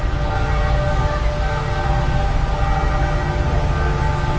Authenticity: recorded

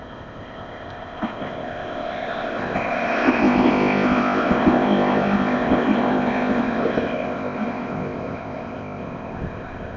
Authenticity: remade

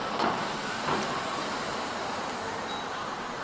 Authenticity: recorded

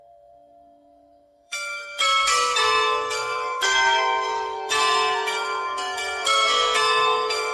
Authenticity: remade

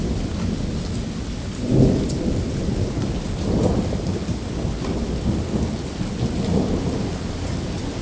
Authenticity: recorded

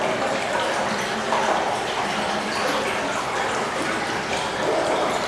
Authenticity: recorded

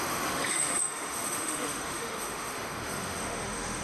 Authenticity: remade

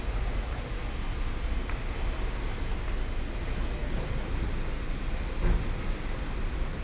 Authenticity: recorded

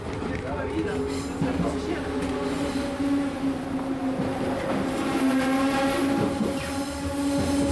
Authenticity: recorded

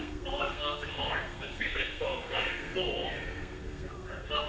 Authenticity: remade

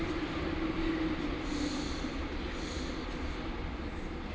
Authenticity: recorded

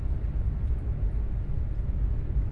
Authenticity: recorded